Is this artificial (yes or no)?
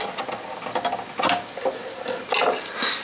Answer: no